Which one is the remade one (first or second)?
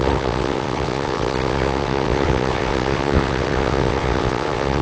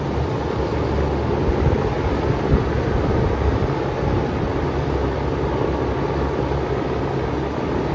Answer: first